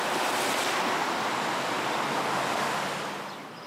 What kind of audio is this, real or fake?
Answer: real